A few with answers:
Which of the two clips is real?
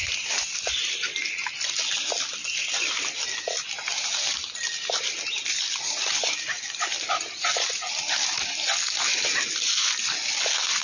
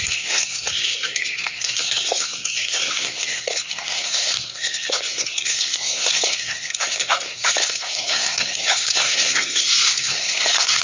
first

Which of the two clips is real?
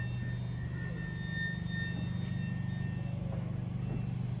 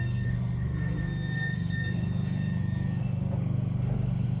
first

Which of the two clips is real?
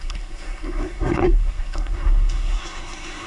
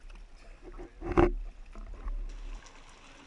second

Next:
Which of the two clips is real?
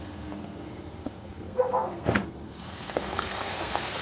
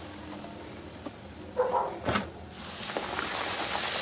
second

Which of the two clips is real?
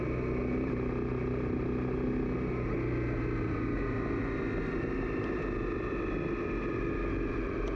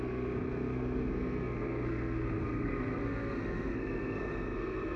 first